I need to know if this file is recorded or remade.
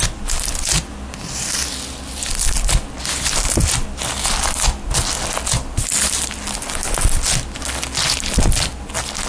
recorded